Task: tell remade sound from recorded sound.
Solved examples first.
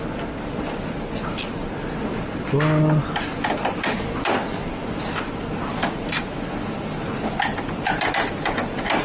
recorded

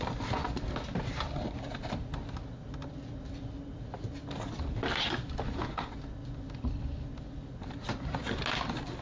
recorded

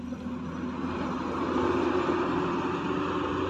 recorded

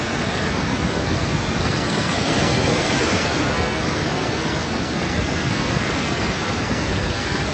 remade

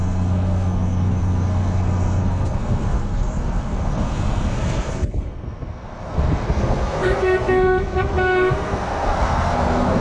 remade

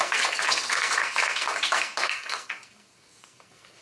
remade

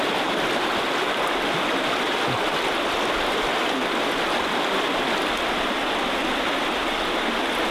recorded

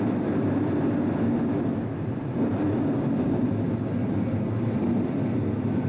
recorded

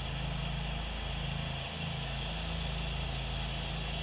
recorded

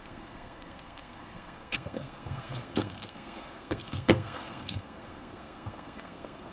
remade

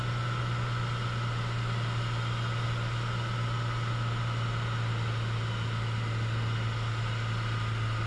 recorded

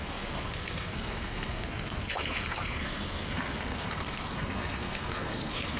remade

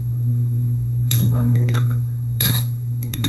remade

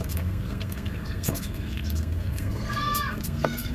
remade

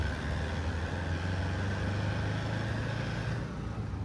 recorded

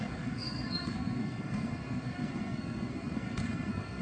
remade